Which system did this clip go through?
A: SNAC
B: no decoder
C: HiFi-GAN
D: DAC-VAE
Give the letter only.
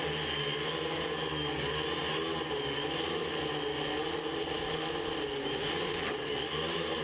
B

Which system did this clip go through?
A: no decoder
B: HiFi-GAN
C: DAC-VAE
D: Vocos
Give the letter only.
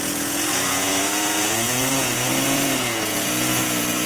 D